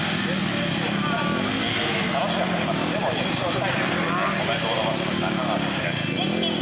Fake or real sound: real